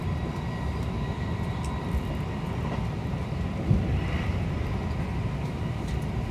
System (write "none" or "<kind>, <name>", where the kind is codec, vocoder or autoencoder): none